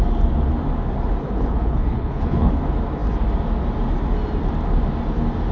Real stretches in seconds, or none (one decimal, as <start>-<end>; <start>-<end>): 0.0-1.2; 2.5-5.5